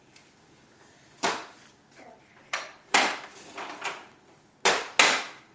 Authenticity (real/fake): real